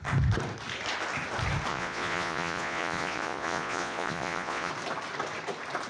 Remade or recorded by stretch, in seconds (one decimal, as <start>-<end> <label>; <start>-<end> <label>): 0.0-1.7 recorded; 1.7-4.7 remade; 4.7-5.9 recorded

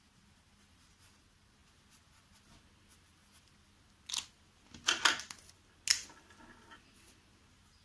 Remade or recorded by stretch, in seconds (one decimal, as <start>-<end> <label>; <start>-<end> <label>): 0.0-7.8 recorded

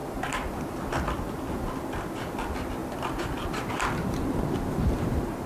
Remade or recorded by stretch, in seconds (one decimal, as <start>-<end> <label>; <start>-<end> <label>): 0.0-5.5 recorded

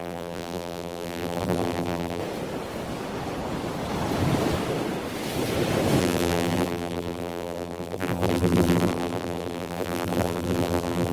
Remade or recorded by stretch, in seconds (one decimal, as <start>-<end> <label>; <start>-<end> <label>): 0.0-2.2 remade; 2.2-6.0 recorded; 6.0-11.1 remade

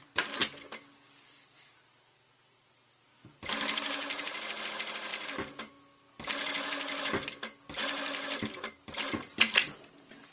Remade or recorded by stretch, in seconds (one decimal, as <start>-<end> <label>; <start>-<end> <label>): 0.0-10.3 recorded